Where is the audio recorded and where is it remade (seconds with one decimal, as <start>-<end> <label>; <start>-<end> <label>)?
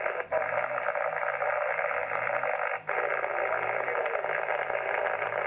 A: 0.0-5.5 recorded